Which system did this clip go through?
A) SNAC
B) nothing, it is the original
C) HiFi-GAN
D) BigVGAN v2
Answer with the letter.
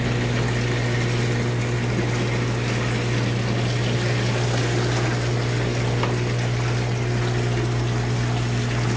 B